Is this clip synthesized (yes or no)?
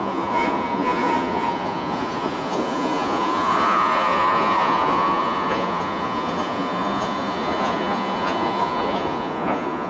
yes